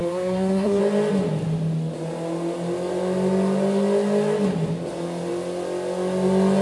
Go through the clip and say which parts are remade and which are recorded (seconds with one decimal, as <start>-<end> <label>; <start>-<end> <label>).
0.0-0.8 remade; 0.8-6.6 recorded